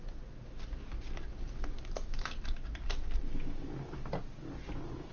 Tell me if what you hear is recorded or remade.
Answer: recorded